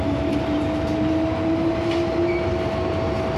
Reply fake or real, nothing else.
real